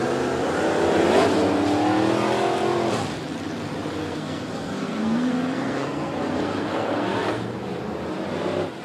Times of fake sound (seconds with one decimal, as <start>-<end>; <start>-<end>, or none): 4.0-7.6